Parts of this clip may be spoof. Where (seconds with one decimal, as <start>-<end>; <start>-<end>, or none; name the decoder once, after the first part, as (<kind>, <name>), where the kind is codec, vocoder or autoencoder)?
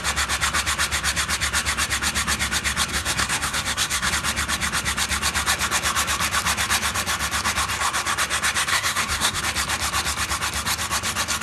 2.9-4.1 (codec, SNAC); 8.7-9.4